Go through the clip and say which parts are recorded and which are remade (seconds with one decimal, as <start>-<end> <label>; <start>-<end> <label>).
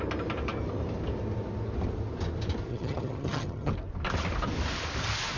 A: 0.0-2.7 recorded; 2.7-3.7 remade; 3.7-5.4 recorded